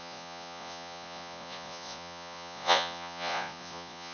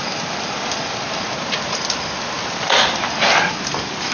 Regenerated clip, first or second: first